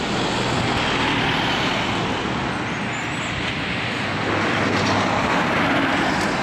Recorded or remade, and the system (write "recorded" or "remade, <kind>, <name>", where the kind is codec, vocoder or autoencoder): recorded